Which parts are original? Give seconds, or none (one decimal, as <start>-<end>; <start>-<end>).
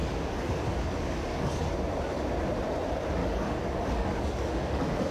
1.6-3.2